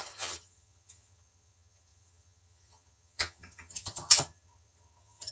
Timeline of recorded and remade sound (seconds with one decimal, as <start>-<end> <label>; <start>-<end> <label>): 0.0-5.3 remade